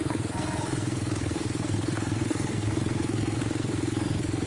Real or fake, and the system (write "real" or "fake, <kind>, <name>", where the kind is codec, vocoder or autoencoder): fake, codec, SNAC